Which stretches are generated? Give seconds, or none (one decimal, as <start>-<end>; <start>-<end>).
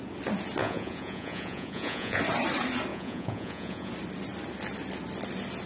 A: 0.6-2.2; 2.9-3.9